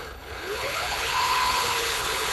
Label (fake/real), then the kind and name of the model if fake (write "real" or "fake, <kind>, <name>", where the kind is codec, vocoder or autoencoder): fake, codec, HILCodec